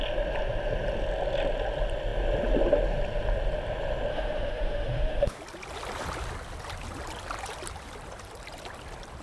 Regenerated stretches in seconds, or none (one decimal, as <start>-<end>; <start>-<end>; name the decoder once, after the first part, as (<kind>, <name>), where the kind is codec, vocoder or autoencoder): 4.1-5.4 (autoencoder, DAC-VAE)